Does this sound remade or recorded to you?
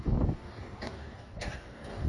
remade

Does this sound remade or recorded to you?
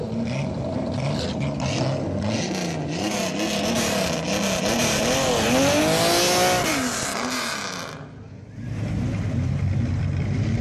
recorded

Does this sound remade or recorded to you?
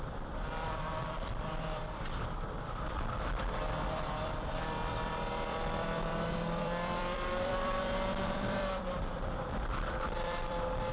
remade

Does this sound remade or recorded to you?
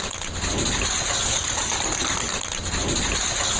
recorded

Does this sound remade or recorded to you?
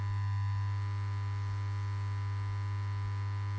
recorded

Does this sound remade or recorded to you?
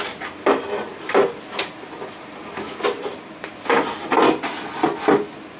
recorded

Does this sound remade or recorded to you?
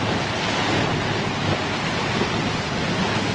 recorded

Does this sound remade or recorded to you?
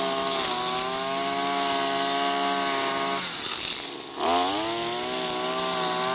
recorded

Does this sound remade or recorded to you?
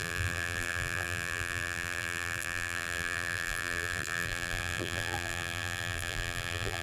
remade